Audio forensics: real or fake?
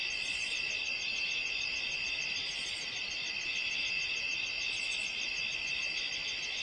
real